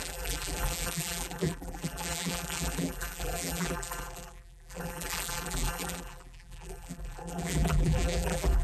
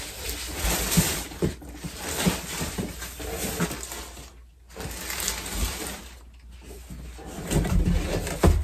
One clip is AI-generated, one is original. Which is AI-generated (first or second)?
first